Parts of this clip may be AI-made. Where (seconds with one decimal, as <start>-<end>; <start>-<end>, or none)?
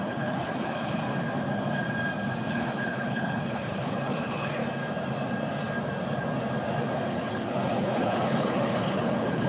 0.0-1.0; 2.5-4.6; 7.1-9.5